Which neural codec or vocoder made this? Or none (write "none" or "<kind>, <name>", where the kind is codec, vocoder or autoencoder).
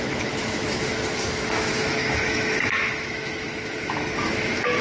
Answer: autoencoder, DAC-VAE